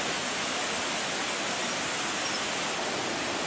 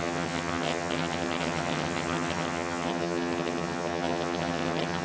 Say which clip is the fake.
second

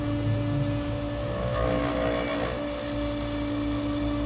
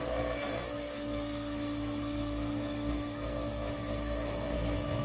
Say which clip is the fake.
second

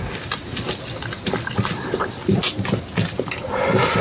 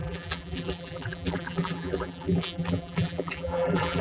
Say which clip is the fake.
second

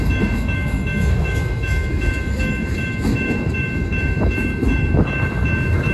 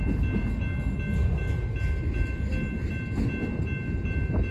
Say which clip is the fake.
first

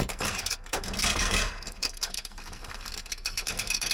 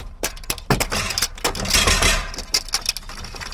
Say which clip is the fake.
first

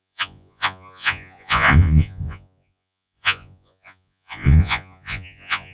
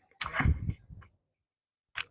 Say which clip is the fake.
first